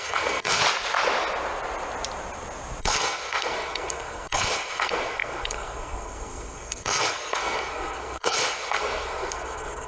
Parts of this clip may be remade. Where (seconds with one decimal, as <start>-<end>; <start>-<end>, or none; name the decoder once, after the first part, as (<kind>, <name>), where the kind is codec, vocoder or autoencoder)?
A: 0.0-0.6 (codec, SNAC); 2.8-9.9